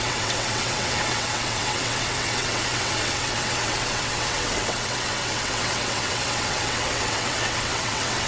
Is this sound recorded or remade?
remade